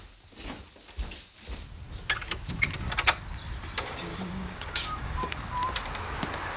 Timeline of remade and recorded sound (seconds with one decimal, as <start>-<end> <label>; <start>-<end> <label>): 0.0-4.1 recorded; 4.1-5.4 remade; 5.4-6.6 recorded